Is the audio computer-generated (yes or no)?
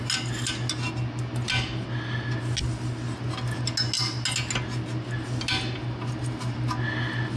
no